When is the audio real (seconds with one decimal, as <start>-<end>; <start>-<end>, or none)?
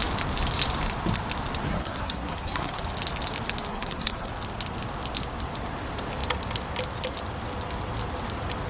0.0-1.7; 2.8-3.7; 4.3-8.7